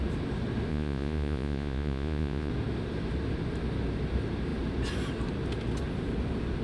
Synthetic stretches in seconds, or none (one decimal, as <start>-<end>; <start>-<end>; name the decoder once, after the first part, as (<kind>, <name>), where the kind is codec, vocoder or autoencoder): 0.7-2.5 (vocoder, Vocos)